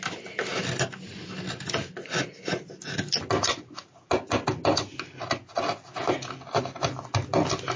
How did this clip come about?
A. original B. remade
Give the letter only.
A